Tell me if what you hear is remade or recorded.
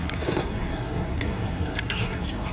remade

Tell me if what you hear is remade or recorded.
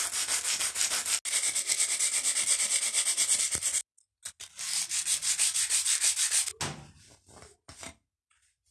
recorded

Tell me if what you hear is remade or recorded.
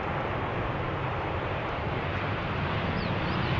recorded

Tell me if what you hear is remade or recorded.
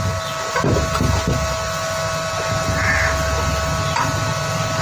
recorded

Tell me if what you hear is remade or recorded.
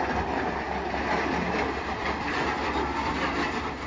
remade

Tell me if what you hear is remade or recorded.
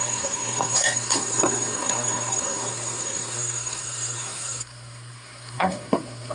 remade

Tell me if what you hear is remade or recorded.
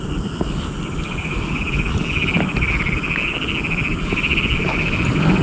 recorded